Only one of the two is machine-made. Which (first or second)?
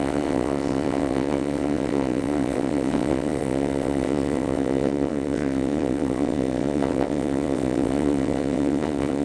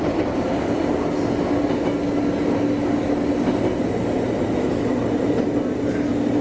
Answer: first